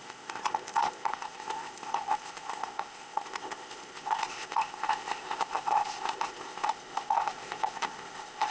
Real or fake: fake